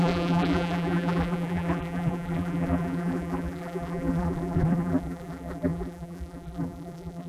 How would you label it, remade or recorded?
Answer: remade